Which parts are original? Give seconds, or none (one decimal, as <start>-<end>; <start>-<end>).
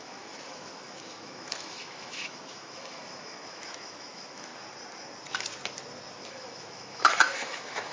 4.5-6.2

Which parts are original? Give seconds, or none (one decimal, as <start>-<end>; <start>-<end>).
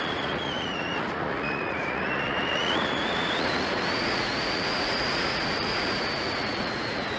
none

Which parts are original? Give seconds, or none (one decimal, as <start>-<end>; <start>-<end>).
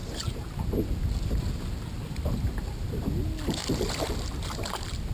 0.0-5.1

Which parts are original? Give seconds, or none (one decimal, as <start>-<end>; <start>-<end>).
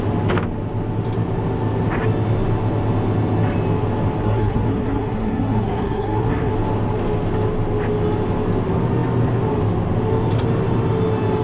0.0-4.2; 6.5-11.4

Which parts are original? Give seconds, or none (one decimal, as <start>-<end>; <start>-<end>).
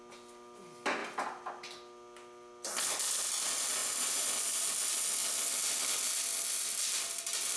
0.0-7.6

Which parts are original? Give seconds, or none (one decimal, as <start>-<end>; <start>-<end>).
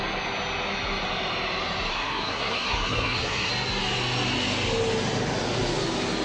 0.0-1.9; 3.5-6.2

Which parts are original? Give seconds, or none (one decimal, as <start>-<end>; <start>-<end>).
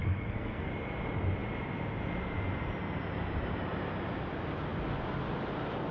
0.7-5.9